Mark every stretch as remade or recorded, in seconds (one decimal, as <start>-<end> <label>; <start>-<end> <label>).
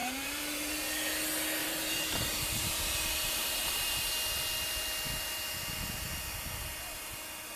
0.0-0.7 remade; 0.7-1.6 recorded; 1.6-4.1 remade; 4.1-7.6 recorded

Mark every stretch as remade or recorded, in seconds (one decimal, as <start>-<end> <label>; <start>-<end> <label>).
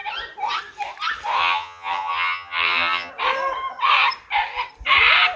0.0-1.4 recorded; 1.4-3.1 remade; 3.1-5.4 recorded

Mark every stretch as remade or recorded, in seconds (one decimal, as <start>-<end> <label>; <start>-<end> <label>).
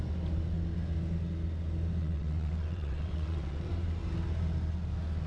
0.0-2.0 recorded; 2.0-3.7 remade; 3.7-5.3 recorded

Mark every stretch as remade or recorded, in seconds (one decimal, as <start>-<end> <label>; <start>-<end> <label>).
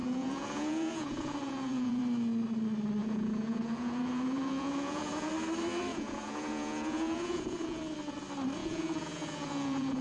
0.0-2.0 remade; 2.0-3.0 recorded; 3.0-5.3 remade; 5.3-5.9 recorded; 5.9-7.8 remade; 7.8-8.6 recorded; 8.6-10.0 remade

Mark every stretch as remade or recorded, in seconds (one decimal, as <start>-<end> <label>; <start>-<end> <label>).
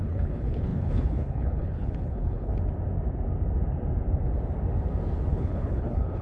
0.0-2.5 remade; 2.5-5.3 recorded; 5.3-6.2 remade